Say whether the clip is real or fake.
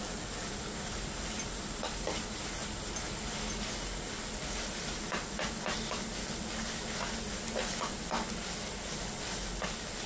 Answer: real